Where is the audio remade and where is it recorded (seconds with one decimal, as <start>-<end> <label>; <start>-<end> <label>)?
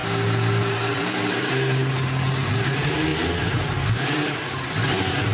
0.0-1.5 remade; 1.5-3.1 recorded; 3.1-4.7 remade; 4.7-5.3 recorded